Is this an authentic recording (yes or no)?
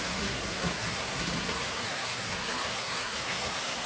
no